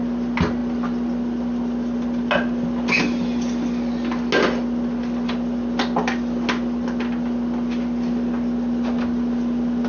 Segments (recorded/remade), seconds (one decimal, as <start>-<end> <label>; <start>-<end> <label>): 0.0-9.9 recorded